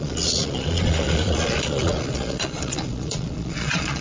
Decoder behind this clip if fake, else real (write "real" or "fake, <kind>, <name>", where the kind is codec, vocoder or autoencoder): fake, vocoder, Vocos